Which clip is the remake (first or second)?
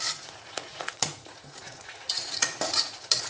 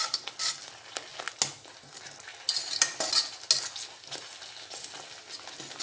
first